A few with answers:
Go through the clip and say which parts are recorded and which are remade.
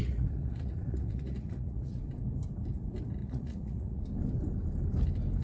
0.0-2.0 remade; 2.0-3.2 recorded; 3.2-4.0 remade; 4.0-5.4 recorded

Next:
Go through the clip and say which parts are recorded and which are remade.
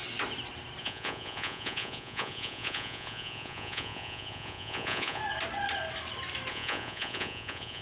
0.0-0.8 recorded; 0.8-5.2 remade; 5.2-6.5 recorded; 6.5-7.8 remade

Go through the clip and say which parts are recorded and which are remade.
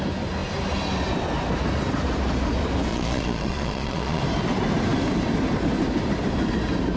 0.0-2.9 recorded; 2.9-4.2 remade; 4.2-7.0 recorded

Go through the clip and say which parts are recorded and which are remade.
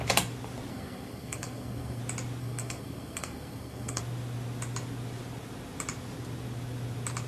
0.0-0.7 recorded; 0.7-2.0 remade; 2.0-2.4 recorded; 2.4-4.0 remade; 4.0-7.3 recorded